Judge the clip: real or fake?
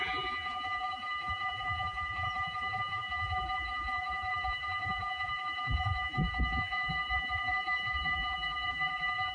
fake